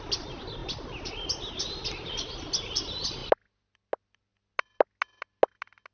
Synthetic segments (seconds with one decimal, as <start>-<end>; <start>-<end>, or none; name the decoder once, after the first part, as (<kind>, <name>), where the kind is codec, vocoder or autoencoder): none